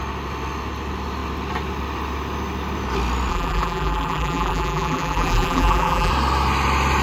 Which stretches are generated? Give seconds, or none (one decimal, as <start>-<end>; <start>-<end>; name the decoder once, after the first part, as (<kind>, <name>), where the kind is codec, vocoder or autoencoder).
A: 3.3-6.1 (vocoder, BigVGAN v2)